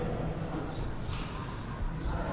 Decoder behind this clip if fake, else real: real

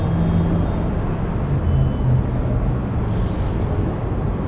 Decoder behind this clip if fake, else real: real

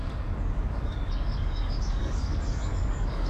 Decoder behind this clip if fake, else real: fake, codec, DAC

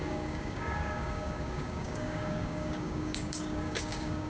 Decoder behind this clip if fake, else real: fake, codec, DAC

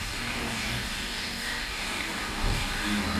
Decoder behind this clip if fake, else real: fake, codec, DAC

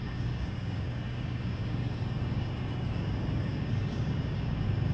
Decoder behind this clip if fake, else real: fake, codec, DAC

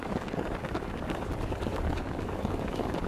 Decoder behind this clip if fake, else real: fake, codec, DAC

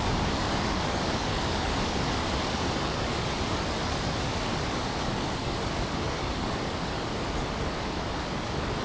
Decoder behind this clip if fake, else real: fake, codec, DAC